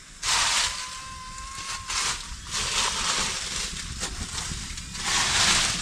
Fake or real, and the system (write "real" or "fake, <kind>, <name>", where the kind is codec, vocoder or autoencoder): real